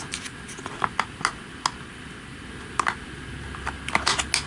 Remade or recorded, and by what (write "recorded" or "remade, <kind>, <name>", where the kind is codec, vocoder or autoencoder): recorded